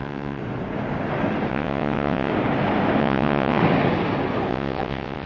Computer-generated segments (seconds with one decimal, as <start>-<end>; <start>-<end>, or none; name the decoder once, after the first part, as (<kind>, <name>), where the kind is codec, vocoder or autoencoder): 0.0-0.4 (vocoder, WaveNeXt); 1.5-2.3; 3.0-3.6; 4.5-5.3